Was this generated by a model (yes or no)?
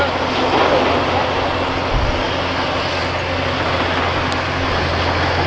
no